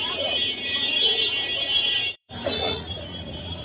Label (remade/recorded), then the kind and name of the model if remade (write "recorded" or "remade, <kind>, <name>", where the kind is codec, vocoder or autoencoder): remade, vocoder, Vocos